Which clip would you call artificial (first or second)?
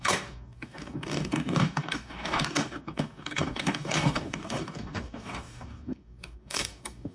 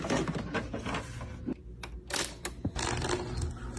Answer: first